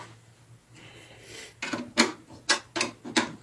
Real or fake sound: real